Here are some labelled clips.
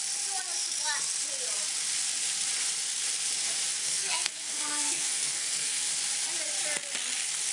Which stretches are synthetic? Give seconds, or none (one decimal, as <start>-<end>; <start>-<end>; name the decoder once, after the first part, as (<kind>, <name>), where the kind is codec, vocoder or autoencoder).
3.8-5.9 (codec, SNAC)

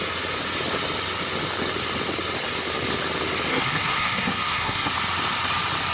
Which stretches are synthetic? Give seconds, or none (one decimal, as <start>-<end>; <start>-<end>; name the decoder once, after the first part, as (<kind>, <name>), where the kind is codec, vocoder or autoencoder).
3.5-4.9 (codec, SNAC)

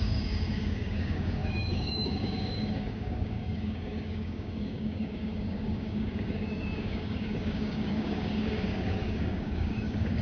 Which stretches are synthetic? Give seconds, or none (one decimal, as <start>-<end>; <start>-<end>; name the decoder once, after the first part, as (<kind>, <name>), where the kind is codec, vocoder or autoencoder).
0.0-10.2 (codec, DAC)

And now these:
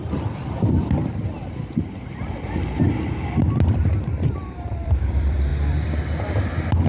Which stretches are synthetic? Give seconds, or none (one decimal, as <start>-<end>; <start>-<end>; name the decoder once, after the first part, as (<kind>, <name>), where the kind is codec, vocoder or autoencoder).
0.0-1.0 (vocoder, BigVGAN v2); 3.8-6.9

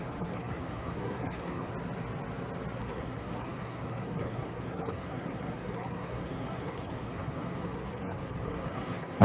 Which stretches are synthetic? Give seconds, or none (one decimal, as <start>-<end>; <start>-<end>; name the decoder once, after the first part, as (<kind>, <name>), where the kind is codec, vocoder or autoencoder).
0.0-1.7 (codec, SNAC); 2.8-9.2